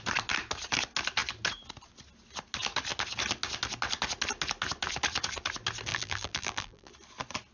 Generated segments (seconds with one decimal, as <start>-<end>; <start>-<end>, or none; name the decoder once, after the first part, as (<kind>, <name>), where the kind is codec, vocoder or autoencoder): 5.9-6.9 (vocoder, BigVGAN v2)